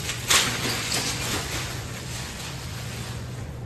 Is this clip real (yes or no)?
no